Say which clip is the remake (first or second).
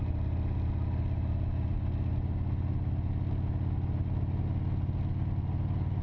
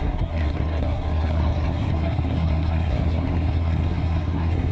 second